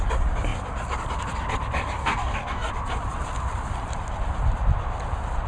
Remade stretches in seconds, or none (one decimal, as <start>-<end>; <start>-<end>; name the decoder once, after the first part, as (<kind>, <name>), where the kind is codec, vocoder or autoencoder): 2.0-2.7 (codec, DAC)

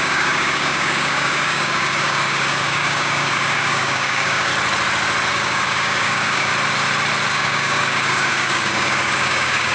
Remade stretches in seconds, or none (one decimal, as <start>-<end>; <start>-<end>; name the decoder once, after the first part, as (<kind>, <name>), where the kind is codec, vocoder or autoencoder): 0.0-4.5 (codec, DAC); 5.3-6.5; 7.3-9.7

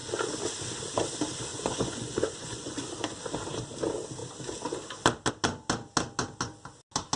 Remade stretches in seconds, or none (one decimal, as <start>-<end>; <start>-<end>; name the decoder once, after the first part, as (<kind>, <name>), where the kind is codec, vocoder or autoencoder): 1.5-2.8 (vocoder, Vocos)

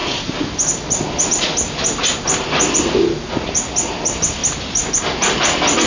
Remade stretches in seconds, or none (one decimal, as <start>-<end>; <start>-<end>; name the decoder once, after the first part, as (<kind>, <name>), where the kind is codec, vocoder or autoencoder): none